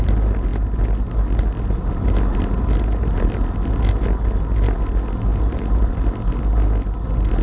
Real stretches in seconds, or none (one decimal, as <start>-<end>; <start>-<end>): 0.0-5.3; 5.9-7.4